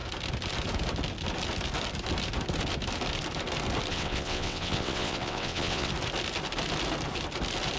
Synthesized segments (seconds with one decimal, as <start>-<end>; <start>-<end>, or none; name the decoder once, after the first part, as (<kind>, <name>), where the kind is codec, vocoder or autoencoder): 3.9-5.9 (vocoder, WaveNeXt)